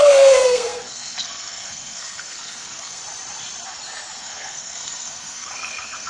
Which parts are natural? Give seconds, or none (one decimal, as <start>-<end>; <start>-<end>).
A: 3.0-4.2